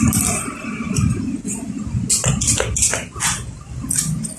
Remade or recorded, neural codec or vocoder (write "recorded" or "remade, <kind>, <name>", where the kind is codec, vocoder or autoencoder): recorded